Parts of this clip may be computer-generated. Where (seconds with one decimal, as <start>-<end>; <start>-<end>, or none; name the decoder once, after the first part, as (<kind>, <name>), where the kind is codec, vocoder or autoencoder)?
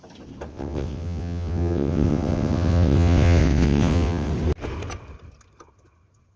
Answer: 0.5-4.3 (vocoder, WaveNeXt)